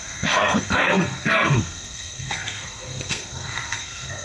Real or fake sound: fake